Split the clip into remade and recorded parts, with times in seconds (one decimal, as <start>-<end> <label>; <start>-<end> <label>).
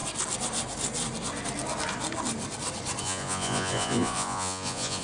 0.0-3.0 recorded; 3.0-5.0 remade